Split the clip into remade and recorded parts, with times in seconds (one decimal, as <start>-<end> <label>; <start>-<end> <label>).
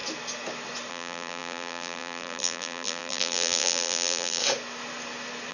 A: 0.0-0.9 recorded; 0.9-4.4 remade; 4.4-5.5 recorded